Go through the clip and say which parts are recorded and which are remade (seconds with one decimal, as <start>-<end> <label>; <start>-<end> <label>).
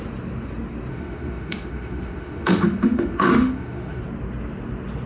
0.0-0.9 recorded; 0.9-4.0 remade; 4.0-5.1 recorded